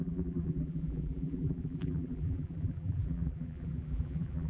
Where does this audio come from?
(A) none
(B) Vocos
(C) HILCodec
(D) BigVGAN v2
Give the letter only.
D